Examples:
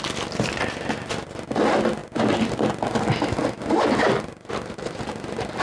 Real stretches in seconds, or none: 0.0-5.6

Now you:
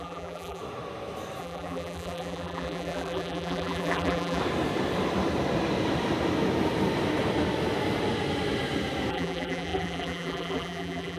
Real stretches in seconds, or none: 0.6-1.4; 4.4-9.1

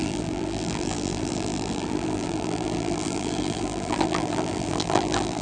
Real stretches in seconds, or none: none

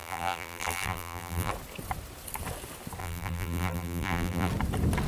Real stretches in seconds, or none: 1.5-3.0; 4.5-5.1

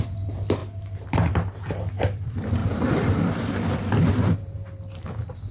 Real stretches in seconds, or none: 0.6-2.0